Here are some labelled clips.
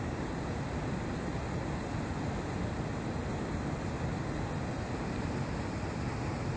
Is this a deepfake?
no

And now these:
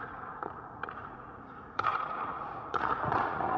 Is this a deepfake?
yes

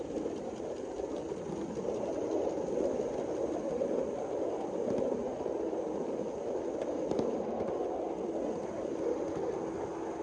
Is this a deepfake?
no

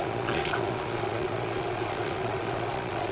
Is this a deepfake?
yes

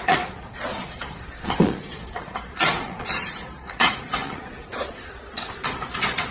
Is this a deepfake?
yes